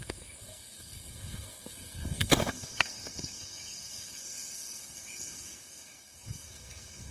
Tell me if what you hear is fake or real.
fake